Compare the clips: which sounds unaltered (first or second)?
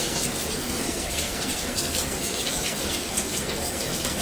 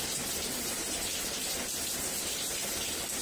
second